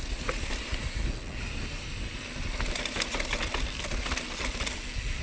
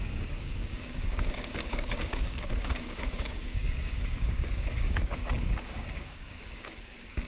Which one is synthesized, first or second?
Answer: second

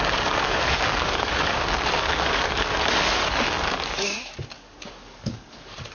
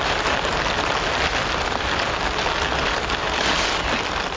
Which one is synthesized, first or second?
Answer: first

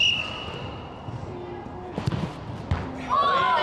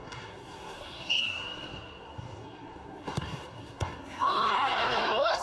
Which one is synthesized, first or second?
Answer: second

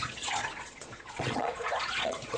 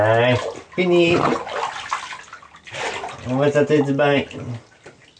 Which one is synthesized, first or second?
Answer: first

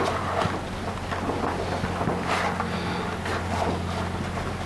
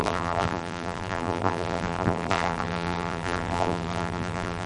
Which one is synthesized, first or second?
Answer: second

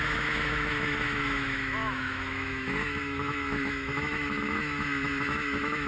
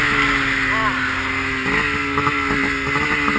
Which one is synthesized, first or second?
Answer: first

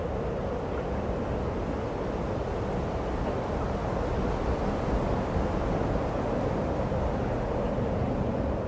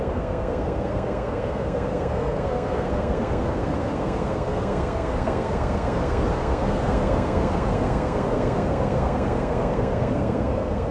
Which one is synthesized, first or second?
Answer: second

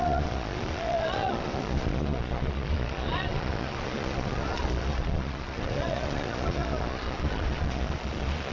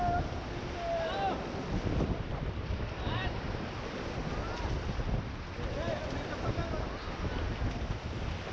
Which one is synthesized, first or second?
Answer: first